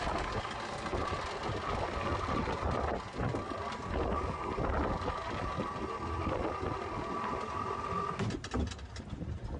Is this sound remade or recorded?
recorded